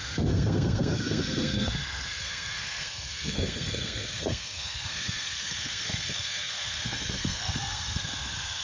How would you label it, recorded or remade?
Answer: remade